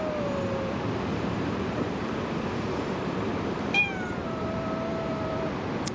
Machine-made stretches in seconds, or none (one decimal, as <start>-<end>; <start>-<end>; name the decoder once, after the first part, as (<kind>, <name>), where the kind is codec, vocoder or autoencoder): 1.1-4.6 (vocoder, BigVGAN v2)